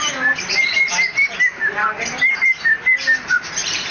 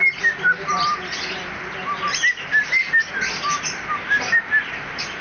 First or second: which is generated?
first